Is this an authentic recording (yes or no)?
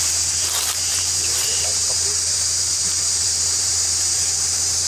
no